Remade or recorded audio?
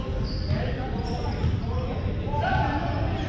recorded